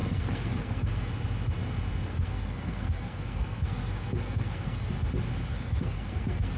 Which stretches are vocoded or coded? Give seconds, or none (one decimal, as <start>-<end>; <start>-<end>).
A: 0.0-1.1; 2.1-4.9; 5.5-6.6